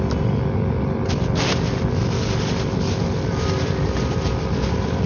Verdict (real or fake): real